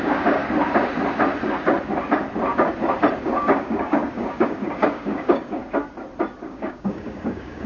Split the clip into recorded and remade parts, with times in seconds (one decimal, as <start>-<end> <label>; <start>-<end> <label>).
0.0-0.4 remade; 0.4-3.2 recorded; 3.2-5.6 remade; 5.6-6.5 recorded; 6.5-7.7 remade